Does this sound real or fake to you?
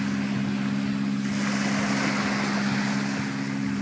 real